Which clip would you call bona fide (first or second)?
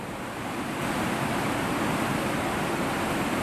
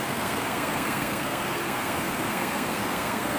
first